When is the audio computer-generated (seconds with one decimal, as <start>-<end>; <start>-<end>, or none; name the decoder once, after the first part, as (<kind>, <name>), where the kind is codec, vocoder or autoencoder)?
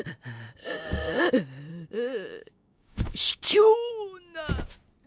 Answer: 0.6-1.2 (codec, DAC); 1.7-3.9